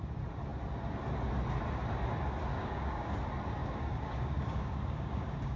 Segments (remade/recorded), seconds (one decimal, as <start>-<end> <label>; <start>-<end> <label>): 0.0-2.5 recorded; 2.5-3.1 remade; 3.1-3.6 recorded; 3.6-5.6 remade